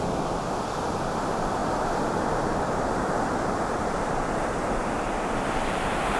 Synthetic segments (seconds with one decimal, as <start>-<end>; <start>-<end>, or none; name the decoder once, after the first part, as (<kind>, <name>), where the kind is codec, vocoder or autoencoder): 0.0-6.2 (vocoder, BigVGAN v2)